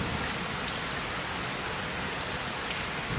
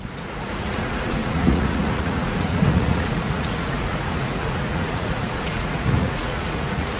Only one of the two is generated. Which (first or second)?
second